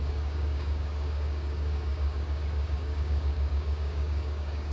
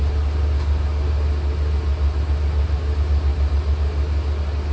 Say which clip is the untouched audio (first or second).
second